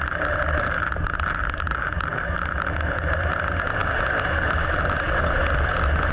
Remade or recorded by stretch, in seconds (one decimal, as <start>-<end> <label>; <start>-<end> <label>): 0.0-6.1 recorded